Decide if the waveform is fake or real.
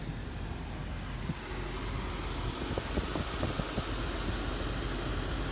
real